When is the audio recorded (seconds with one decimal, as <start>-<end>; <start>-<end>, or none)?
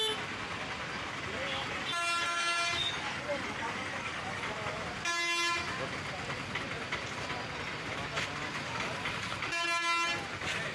0.0-2.8; 4.4-10.7